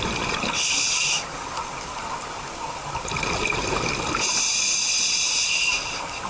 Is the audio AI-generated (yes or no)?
no